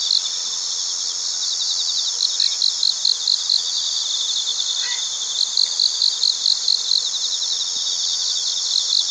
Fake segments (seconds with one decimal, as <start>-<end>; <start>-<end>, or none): none